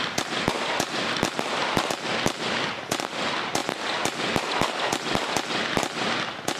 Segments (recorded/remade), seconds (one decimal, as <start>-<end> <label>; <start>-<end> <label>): 0.0-6.6 recorded

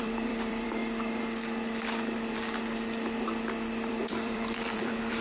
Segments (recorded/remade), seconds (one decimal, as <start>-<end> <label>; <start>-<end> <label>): 0.0-0.8 remade; 0.8-3.9 recorded; 3.9-5.2 remade

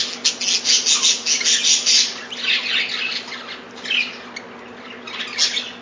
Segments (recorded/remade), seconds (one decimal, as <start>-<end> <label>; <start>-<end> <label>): 0.0-5.8 recorded

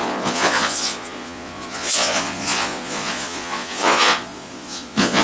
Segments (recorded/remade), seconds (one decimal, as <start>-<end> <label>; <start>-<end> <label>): 0.0-5.2 remade

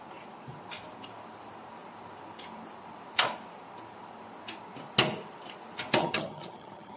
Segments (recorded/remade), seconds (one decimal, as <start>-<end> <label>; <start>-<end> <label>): 0.0-6.0 recorded; 6.0-7.0 remade

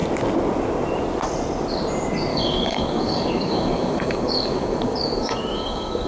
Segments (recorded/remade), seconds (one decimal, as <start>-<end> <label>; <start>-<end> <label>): 0.0-2.3 recorded; 2.3-6.1 remade

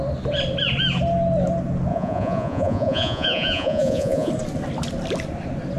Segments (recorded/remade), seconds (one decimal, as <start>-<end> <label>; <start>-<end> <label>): 0.0-1.9 recorded; 1.9-4.3 remade; 4.3-5.8 recorded

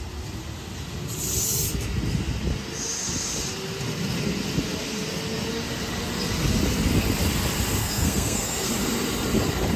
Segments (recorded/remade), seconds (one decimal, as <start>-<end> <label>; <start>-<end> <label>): 0.0-7.8 recorded; 7.8-8.7 remade; 8.7-9.8 recorded